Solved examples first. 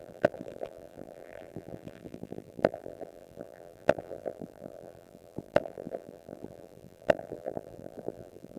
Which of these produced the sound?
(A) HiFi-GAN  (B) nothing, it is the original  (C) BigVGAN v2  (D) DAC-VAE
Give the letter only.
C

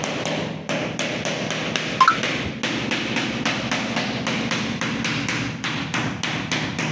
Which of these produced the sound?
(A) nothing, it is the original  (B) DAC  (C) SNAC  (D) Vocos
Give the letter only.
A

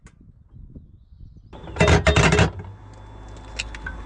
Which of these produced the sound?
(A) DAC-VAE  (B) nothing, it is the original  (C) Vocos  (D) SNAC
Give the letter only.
B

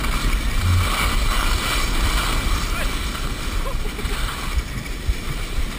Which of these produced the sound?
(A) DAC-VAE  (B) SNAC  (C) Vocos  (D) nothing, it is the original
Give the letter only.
D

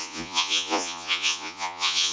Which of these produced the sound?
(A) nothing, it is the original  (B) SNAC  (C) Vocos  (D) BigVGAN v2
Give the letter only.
C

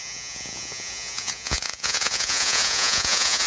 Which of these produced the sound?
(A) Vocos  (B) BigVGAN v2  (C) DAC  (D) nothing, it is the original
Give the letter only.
A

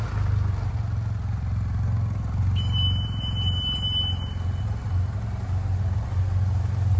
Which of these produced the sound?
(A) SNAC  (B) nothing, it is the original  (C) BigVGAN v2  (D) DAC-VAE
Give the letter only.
B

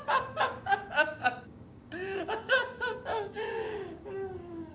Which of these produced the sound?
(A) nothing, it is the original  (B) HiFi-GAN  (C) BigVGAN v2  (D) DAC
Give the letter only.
D